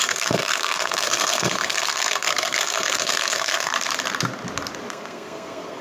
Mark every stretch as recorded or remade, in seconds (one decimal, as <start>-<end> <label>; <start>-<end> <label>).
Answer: 0.0-3.7 remade; 3.7-4.9 recorded; 4.9-5.8 remade